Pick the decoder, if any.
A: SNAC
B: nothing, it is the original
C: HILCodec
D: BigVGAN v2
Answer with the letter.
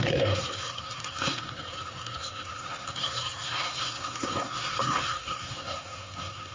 A